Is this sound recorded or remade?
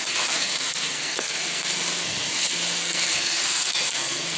remade